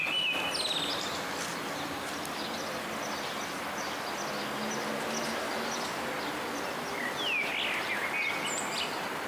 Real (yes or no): yes